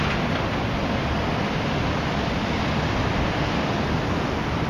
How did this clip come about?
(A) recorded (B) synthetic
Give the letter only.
A